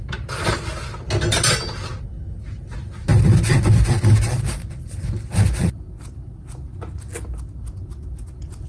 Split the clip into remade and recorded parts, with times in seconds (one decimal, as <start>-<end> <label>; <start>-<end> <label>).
0.0-8.7 recorded